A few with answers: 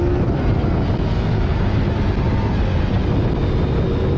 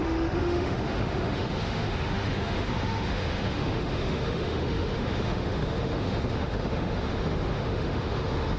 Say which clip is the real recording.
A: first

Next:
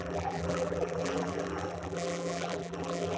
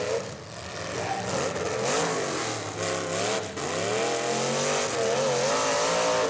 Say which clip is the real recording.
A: second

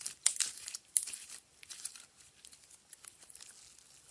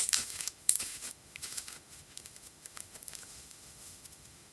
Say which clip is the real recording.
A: first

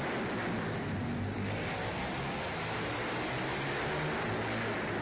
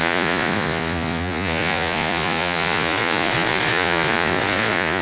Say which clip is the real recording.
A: first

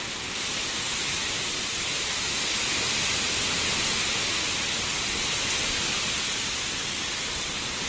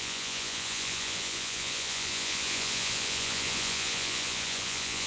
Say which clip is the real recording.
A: first